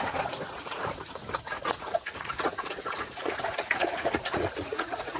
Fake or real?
fake